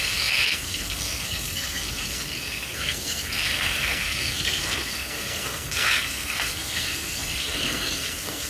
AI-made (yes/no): yes